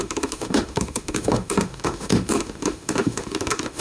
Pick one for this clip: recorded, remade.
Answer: remade